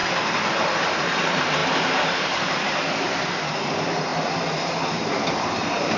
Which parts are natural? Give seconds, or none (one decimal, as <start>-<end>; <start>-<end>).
0.0-0.5